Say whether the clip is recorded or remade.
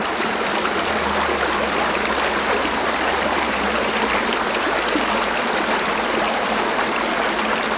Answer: recorded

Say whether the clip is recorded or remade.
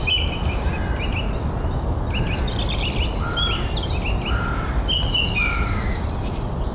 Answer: recorded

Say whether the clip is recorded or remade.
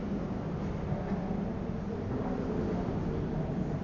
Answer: recorded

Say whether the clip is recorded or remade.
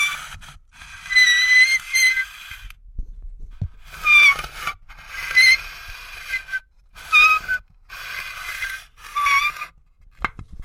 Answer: recorded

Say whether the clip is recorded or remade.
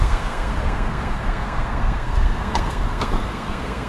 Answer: remade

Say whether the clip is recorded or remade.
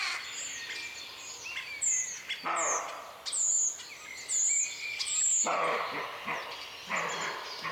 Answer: recorded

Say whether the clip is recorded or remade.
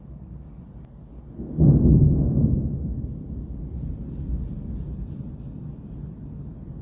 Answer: recorded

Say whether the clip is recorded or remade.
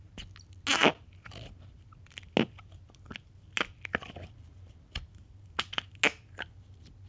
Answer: recorded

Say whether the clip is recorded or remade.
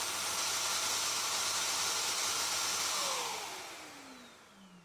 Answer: recorded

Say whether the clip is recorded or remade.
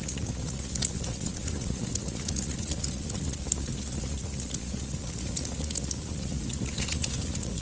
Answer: remade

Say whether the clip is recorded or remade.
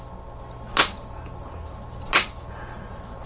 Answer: recorded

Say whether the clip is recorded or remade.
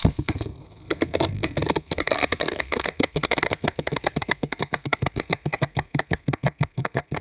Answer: remade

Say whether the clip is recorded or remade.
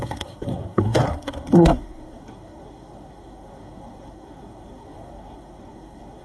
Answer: remade